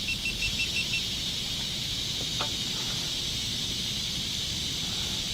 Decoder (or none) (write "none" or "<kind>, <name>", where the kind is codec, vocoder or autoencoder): none